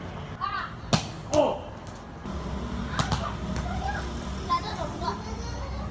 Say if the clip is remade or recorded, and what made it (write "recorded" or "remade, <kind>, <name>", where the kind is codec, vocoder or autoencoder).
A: recorded